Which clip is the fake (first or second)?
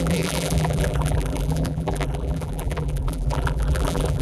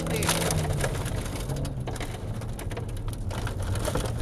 first